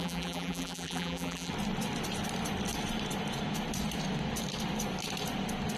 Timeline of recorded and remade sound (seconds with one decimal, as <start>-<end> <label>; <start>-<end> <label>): 0.0-1.5 remade; 1.5-5.8 recorded